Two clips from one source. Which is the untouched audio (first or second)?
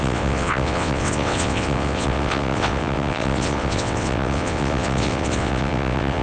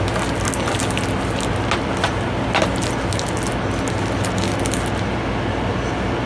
second